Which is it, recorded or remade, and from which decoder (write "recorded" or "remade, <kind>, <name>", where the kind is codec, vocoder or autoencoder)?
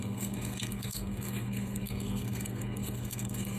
remade, codec, SNAC